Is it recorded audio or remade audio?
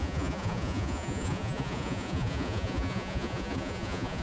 remade